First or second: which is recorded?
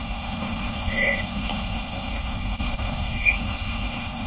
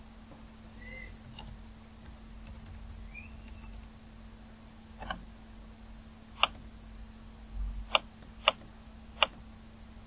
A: second